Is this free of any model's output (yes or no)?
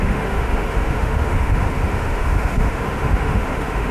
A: no